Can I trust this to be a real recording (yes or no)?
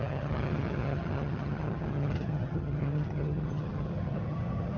no